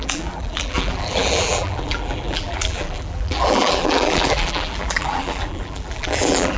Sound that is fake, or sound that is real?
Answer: fake